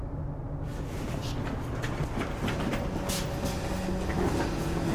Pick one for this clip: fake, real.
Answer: real